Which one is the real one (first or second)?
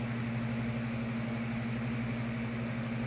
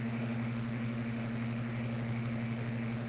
first